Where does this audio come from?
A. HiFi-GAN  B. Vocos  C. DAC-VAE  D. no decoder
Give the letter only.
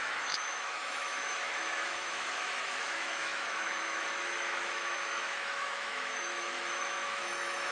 C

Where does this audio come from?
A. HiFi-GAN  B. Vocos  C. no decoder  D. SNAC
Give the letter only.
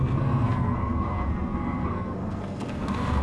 D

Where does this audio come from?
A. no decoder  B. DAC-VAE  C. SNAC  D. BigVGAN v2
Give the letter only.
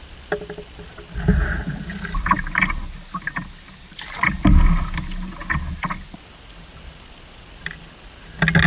A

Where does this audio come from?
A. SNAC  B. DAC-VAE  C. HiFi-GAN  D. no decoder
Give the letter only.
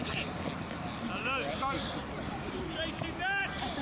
D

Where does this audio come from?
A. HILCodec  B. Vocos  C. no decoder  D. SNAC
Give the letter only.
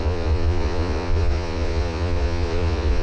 B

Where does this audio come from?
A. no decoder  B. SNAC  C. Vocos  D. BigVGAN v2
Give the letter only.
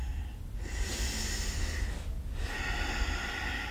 A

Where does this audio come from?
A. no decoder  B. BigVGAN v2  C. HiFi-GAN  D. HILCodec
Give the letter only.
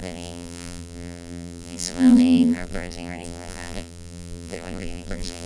B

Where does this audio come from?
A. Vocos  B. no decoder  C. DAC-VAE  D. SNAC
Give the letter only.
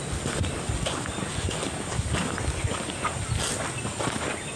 B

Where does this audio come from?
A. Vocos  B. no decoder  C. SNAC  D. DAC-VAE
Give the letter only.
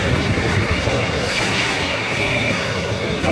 C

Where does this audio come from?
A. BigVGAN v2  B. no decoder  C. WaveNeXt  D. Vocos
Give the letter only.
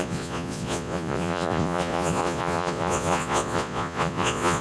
D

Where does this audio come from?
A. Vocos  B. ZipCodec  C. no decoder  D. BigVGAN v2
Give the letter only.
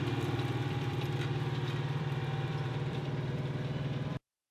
D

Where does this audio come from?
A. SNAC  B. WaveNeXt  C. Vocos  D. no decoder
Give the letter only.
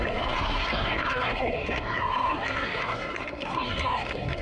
A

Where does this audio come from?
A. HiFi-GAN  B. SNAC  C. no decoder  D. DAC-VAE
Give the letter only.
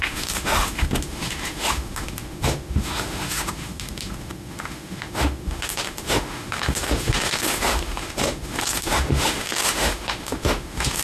D